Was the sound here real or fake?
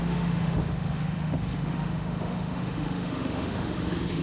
fake